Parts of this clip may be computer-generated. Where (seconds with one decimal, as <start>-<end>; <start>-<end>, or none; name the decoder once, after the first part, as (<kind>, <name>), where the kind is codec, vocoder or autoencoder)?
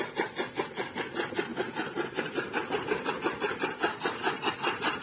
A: none